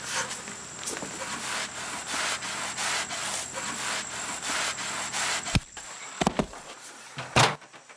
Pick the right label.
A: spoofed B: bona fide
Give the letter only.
B